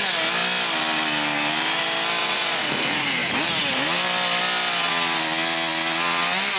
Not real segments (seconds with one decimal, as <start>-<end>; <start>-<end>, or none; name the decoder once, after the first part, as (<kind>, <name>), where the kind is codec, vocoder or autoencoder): 2.2-2.8 (vocoder, Vocos)